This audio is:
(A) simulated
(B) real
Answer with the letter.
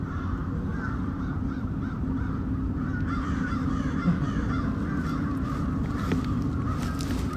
B